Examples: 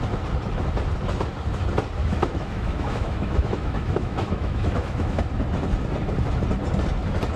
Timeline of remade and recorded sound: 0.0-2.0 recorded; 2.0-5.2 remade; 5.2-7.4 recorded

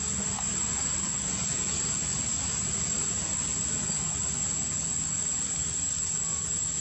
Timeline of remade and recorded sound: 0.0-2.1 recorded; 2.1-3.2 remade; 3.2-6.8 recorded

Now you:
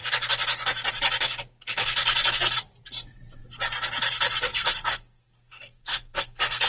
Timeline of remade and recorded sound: 0.0-4.5 recorded; 4.5-6.7 remade